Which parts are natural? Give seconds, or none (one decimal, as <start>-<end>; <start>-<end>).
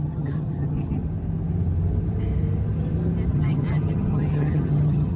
1.0-3.3